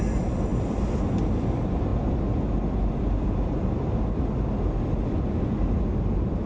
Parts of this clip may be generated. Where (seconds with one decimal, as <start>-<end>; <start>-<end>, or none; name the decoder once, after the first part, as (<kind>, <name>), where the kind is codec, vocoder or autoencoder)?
none